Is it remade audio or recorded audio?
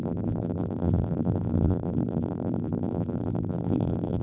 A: remade